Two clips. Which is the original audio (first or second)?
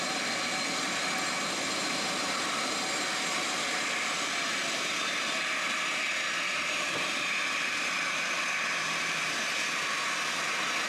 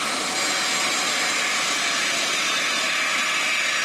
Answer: second